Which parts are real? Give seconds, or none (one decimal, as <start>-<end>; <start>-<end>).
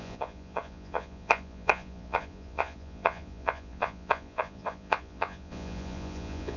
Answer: none